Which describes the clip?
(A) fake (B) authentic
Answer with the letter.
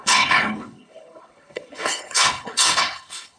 A